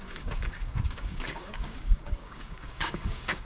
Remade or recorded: remade